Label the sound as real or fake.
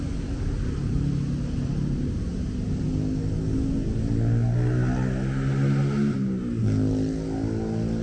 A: real